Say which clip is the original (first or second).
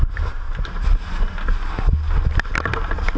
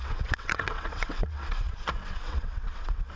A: first